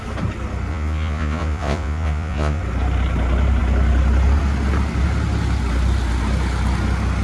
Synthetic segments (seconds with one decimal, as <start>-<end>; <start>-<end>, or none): 0.7-2.6